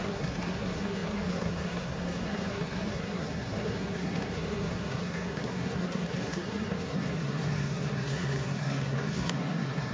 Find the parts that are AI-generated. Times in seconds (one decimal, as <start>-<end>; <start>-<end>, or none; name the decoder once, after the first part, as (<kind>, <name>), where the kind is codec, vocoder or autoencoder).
0.0-9.9 (codec, SNAC)